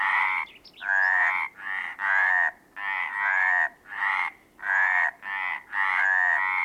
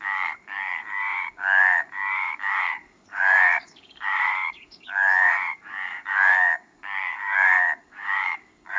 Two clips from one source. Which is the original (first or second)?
first